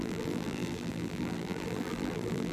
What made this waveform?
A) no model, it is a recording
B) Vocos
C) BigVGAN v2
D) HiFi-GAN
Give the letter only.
C